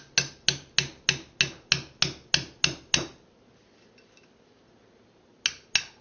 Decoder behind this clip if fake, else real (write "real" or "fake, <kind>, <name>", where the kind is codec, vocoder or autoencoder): real